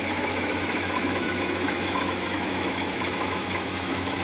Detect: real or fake fake